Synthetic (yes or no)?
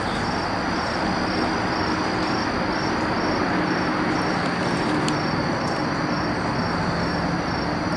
no